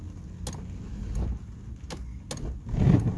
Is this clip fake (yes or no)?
no